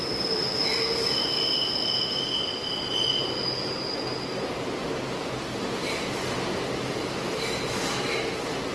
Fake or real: real